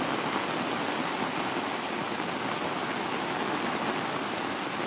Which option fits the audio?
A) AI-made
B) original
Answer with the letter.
B